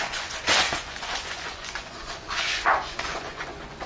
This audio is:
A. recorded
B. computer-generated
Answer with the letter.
B